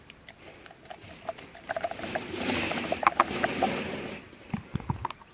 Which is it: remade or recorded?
recorded